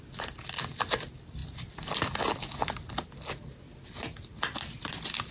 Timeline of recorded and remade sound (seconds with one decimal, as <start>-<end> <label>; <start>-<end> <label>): 0.0-5.3 recorded